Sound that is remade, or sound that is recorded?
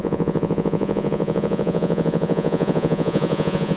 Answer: remade